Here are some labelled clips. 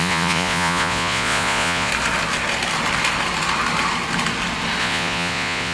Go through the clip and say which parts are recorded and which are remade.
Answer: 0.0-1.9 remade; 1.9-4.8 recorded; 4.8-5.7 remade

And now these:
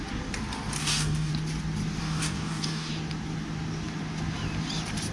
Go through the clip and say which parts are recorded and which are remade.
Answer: 0.0-0.8 recorded; 0.8-1.3 remade; 1.3-2.0 recorded; 2.0-2.9 remade; 2.9-5.1 recorded